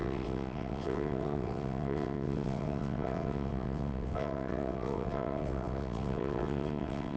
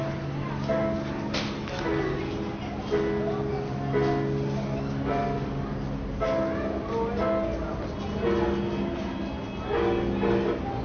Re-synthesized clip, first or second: first